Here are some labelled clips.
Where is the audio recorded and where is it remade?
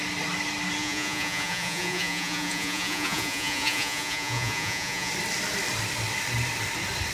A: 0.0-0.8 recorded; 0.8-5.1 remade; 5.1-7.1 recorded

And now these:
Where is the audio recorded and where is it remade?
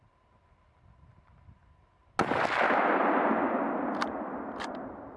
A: 0.0-5.2 recorded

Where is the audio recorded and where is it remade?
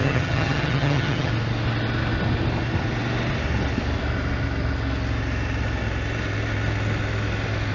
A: 0.0-1.3 remade; 1.3-7.7 recorded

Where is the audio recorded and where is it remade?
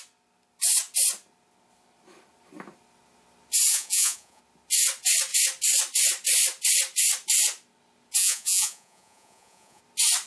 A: 0.0-3.7 recorded; 3.7-4.4 remade; 4.4-8.2 recorded; 8.2-9.8 remade; 9.8-10.3 recorded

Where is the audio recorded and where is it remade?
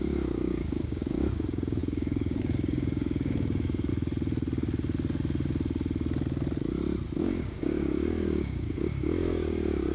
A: 0.0-3.9 remade; 3.9-7.2 recorded; 7.2-9.9 remade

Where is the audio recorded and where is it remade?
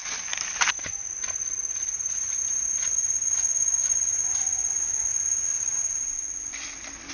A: 0.0-5.1 recorded; 5.1-6.2 remade; 6.2-7.1 recorded